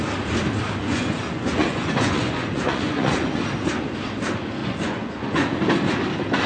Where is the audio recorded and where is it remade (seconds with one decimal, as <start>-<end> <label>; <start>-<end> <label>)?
0.0-0.8 recorded; 0.8-3.4 remade; 3.4-4.6 recorded; 4.6-5.6 remade; 5.6-6.5 recorded